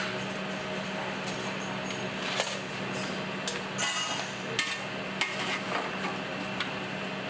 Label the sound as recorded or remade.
recorded